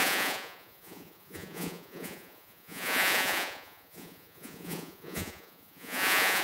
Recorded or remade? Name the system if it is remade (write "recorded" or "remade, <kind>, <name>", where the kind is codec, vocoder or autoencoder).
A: remade, vocoder, Vocos